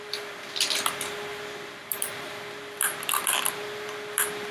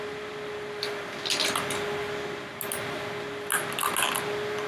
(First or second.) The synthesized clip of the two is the first